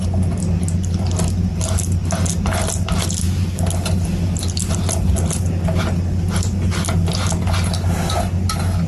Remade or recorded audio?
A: recorded